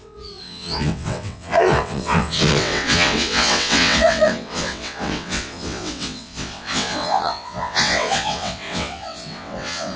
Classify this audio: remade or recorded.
remade